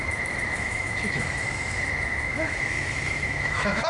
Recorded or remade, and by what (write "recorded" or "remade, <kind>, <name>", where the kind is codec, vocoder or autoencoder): remade, autoencoder, DAC-VAE